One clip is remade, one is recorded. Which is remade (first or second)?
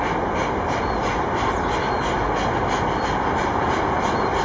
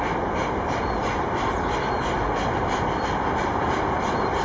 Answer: second